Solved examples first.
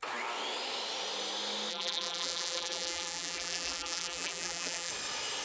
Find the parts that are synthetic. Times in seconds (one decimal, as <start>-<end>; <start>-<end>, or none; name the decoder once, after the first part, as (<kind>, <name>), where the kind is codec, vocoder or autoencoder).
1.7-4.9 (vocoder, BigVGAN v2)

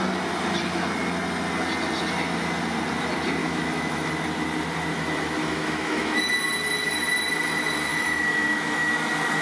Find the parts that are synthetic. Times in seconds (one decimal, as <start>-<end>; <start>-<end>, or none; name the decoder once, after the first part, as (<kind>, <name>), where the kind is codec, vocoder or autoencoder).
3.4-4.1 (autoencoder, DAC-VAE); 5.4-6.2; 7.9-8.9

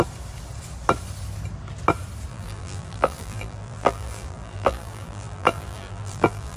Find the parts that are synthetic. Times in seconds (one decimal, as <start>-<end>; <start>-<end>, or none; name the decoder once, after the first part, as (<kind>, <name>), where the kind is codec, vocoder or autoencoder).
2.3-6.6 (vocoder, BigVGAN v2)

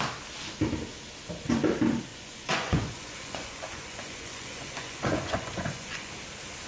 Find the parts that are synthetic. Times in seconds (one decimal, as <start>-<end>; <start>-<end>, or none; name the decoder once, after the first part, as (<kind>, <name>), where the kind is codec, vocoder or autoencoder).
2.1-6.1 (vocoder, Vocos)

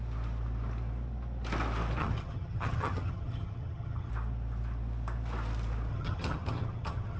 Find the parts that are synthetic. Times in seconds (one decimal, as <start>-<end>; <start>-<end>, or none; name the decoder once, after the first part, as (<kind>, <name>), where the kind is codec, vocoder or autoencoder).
2.0-4.1 (vocoder, HiFi-GAN); 5.9-7.2